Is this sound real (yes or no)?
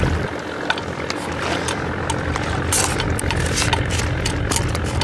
yes